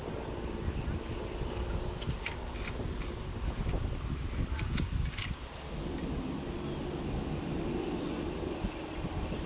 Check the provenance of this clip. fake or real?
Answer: real